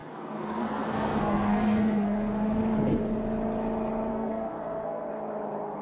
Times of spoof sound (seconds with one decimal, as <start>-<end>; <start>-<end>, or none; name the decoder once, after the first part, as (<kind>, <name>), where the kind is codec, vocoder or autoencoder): 0.0-2.6 (codec, SNAC); 4.1-5.1